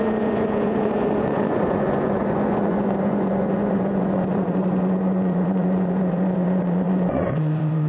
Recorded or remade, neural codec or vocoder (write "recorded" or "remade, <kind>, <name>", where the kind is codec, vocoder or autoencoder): remade, vocoder, Vocos